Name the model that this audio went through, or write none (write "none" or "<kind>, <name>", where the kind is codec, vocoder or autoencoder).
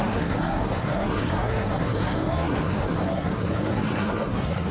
codec, SNAC